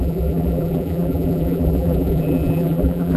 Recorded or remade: remade